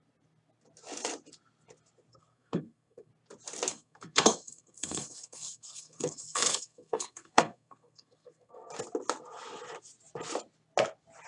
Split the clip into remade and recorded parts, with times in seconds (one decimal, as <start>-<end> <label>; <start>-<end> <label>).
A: 0.0-2.1 recorded; 2.1-3.1 remade; 3.1-3.7 recorded; 3.7-8.7 remade; 8.7-11.3 recorded